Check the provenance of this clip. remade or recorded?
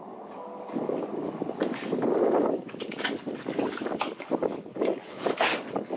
remade